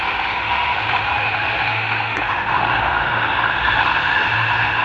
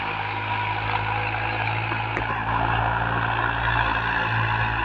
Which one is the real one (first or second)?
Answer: second